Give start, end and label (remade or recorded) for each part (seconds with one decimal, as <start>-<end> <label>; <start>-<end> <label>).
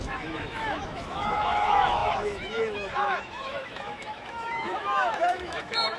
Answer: 0.0-6.0 remade